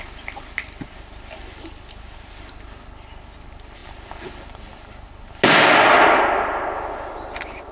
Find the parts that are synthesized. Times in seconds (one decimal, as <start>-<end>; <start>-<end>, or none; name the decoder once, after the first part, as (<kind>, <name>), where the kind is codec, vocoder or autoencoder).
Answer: none